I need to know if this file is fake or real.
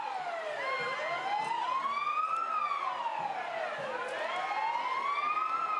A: real